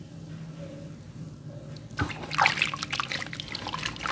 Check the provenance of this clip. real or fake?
real